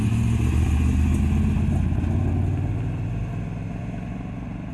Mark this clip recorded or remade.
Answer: recorded